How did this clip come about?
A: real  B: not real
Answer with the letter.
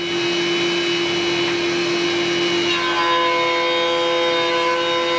A